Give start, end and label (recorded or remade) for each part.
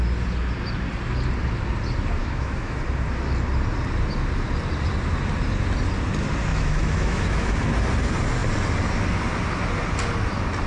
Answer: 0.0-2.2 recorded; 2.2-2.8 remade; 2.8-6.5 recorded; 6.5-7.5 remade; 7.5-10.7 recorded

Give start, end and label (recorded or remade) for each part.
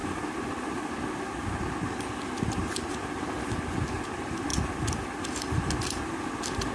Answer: 0.0-6.7 recorded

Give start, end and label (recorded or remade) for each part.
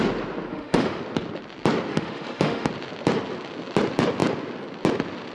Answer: 0.0-0.5 recorded; 0.5-1.0 remade; 1.0-1.9 recorded; 1.9-2.7 remade; 2.7-5.3 recorded